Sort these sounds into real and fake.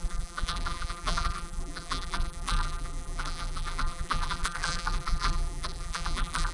fake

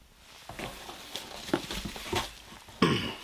real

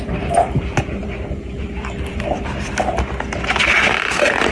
fake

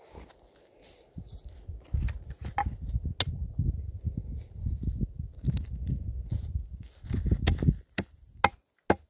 real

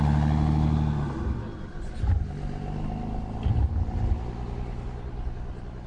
real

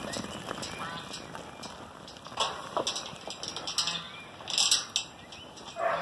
real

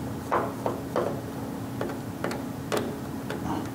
real